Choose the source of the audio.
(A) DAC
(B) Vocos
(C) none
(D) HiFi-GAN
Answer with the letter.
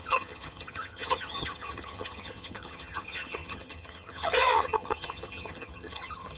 D